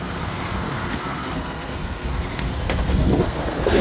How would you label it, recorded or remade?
remade